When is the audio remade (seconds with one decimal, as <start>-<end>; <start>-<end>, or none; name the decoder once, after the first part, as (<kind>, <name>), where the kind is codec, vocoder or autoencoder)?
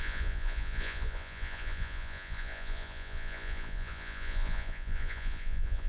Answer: 0.0-5.9 (vocoder, Vocos)